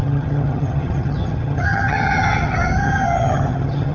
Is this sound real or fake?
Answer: fake